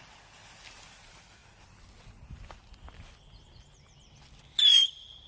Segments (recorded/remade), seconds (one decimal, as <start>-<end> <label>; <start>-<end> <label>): 0.0-5.3 recorded